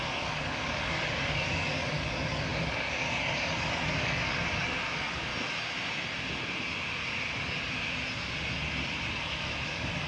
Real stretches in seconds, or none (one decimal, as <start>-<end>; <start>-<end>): 5.3-9.1